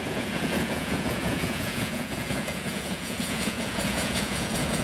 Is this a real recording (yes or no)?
no